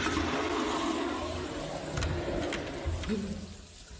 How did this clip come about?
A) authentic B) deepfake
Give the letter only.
A